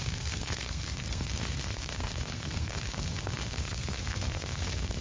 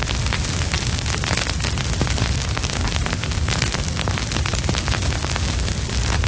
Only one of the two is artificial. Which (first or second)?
first